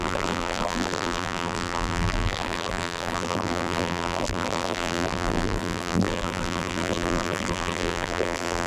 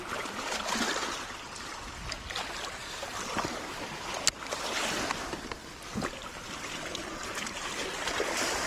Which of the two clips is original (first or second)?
second